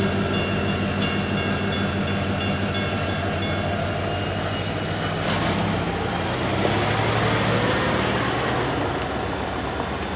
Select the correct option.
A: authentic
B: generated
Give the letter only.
A